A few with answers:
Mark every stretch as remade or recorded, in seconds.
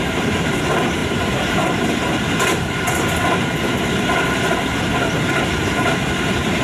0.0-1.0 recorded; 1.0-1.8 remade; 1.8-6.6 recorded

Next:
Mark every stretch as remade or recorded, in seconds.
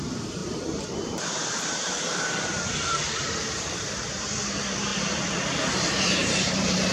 0.0-4.9 remade; 4.9-5.9 recorded; 5.9-6.9 remade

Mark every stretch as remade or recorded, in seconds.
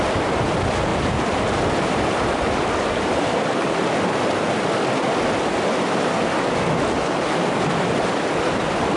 0.0-0.9 recorded; 0.9-1.6 remade; 1.6-9.0 recorded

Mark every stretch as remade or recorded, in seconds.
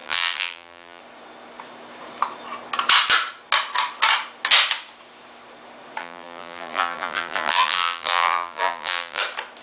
0.0-1.0 remade; 1.0-6.0 recorded; 6.0-9.2 remade; 9.2-9.6 recorded